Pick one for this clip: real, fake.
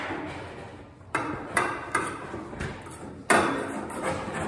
fake